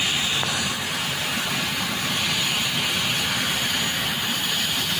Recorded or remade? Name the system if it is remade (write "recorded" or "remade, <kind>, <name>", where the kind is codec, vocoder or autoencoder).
recorded